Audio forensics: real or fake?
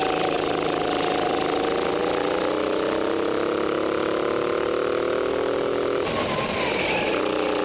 real